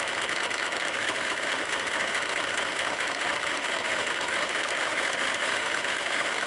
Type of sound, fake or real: fake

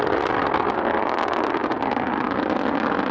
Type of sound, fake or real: real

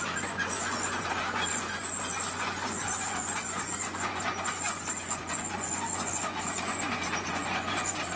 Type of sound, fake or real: fake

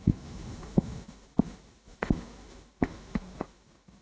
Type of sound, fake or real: fake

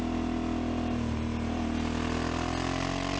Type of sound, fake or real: real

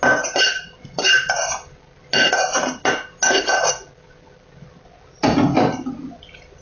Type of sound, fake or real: real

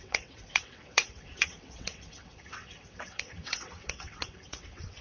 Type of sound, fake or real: fake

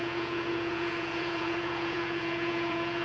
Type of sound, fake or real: fake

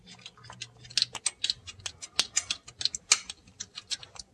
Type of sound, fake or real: real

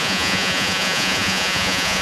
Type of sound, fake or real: fake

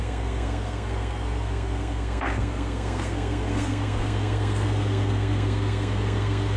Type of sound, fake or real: fake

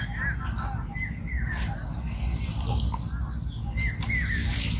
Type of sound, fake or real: real